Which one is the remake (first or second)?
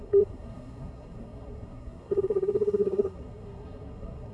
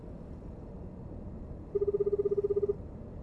first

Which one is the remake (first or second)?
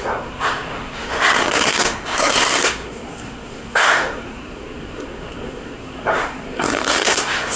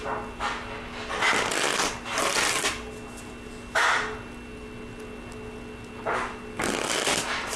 first